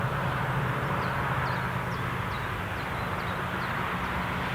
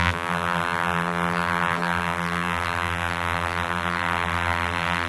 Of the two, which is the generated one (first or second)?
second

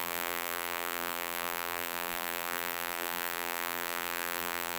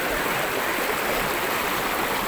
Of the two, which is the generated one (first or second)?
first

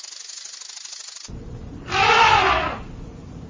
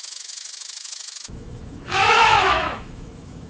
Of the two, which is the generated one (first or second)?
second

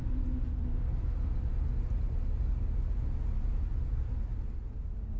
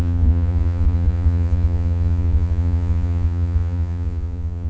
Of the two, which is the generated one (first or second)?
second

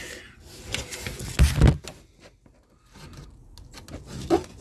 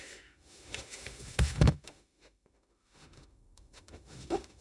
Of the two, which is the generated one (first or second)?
second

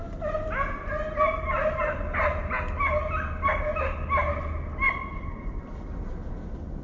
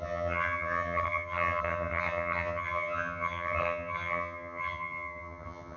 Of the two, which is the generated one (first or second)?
second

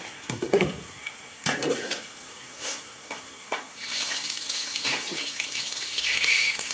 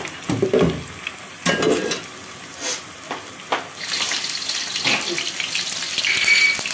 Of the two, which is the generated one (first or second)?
first